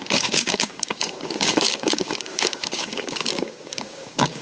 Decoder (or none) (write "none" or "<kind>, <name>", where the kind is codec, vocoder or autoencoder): codec, DAC